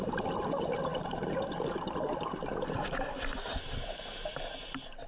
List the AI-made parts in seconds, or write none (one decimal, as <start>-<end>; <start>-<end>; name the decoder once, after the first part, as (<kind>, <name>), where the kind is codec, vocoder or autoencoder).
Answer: none